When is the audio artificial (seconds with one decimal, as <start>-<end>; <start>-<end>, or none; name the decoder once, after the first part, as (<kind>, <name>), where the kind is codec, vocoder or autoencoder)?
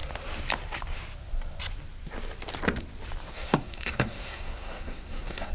3.3-5.5 (codec, SNAC)